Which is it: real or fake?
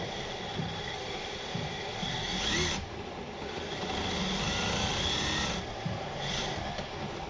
real